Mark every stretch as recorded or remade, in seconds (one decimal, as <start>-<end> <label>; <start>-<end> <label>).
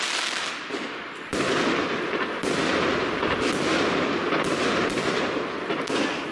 0.0-6.3 recorded